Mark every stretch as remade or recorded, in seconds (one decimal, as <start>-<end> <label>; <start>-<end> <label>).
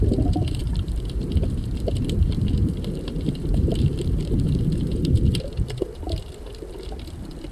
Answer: 0.0-0.6 recorded; 0.6-5.1 remade; 5.1-7.5 recorded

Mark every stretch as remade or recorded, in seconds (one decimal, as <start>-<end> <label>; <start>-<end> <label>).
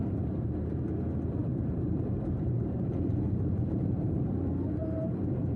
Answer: 0.0-1.4 recorded; 1.4-4.3 remade; 4.3-4.8 recorded; 4.8-5.6 remade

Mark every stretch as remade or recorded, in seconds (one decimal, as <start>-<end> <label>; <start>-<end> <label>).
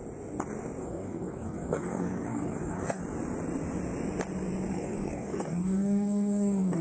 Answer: 0.0-0.8 recorded; 0.8-3.0 remade; 3.0-4.7 recorded; 4.7-6.8 remade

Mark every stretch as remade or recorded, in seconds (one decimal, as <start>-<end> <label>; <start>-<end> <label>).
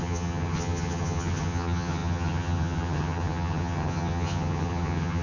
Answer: 0.0-5.2 remade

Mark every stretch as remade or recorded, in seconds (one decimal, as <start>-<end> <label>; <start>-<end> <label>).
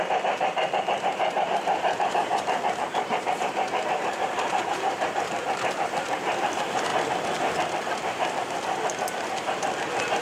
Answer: 0.0-6.9 remade; 6.9-10.2 recorded